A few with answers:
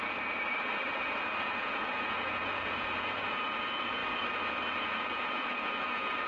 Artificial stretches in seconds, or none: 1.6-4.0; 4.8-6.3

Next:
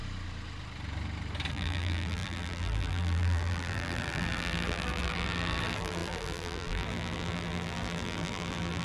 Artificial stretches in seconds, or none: 1.5-8.8

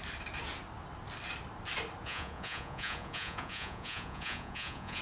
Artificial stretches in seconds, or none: 2.0-5.0

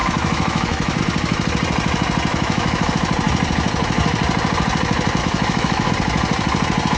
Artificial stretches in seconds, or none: 0.0-1.0; 2.3-2.9; 5.2-5.9

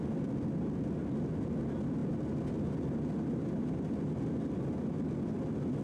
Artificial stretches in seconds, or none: none

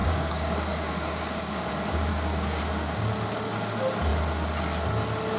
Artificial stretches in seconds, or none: 0.0-1.7; 2.1-2.6